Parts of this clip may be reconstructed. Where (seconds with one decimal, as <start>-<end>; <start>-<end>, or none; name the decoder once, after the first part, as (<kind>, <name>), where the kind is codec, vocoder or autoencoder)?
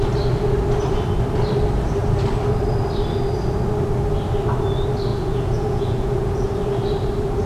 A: 5.1-6.5 (vocoder, Vocos)